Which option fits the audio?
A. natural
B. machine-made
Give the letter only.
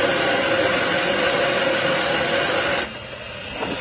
A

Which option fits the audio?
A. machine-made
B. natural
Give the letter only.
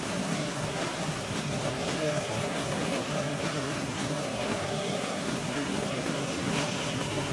A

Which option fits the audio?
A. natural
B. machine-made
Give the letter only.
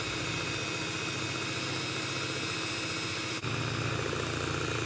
A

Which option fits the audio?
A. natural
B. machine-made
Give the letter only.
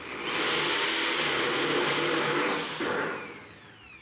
A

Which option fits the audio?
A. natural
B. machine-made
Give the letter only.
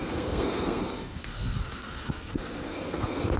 B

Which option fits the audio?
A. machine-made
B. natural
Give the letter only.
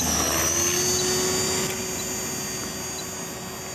B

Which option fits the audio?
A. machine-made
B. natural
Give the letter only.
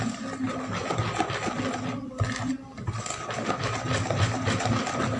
B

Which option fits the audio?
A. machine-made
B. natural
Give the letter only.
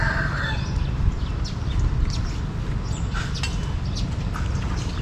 B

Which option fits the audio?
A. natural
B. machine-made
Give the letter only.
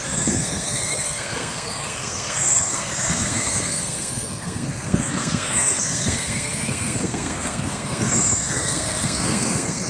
B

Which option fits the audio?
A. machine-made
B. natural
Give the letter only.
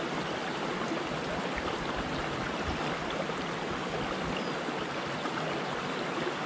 B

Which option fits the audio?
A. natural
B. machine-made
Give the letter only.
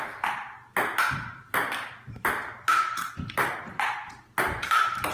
A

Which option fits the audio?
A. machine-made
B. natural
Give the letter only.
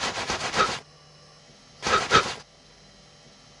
B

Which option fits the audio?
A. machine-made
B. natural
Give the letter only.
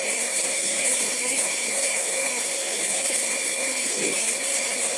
A